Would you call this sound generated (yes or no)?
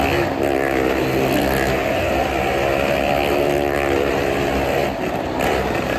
no